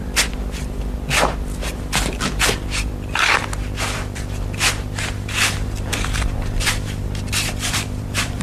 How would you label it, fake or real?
fake